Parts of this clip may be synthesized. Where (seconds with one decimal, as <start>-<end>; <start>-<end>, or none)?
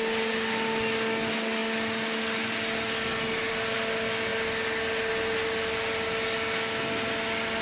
none